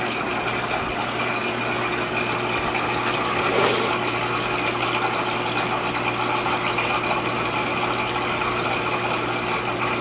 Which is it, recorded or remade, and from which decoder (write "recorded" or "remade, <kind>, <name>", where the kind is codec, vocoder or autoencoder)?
recorded